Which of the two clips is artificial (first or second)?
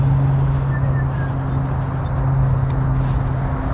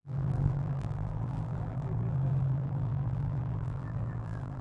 second